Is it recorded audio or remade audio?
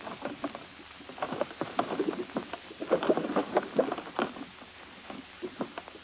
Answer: recorded